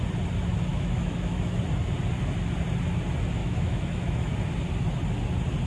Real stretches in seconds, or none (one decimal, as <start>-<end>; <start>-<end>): 0.0-0.7; 1.6-3.4; 4.3-5.7